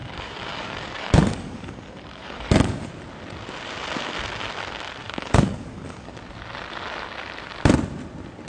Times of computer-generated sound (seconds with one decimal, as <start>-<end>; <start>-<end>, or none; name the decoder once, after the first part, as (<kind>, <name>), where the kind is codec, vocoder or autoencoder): 0.0-2.9 (codec, DAC); 5.0-6.2